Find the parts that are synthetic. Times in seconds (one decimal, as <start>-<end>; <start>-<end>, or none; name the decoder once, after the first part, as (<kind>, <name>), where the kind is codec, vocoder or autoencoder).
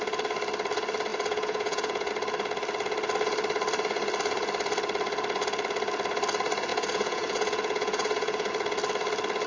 1.1-2.1 (vocoder, Vocos); 6.7-8.5